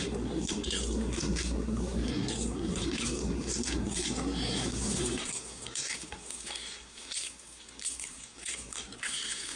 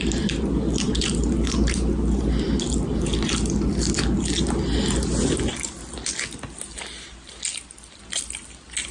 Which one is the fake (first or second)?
first